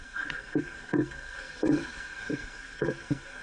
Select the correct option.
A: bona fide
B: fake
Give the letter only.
B